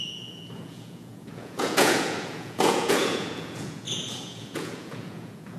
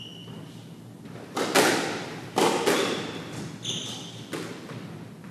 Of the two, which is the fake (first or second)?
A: first